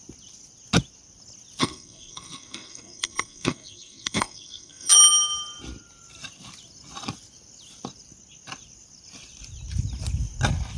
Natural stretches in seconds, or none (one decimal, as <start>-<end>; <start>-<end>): 0.0-1.6; 4.9-10.8